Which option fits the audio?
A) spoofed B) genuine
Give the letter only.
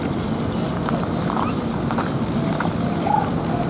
B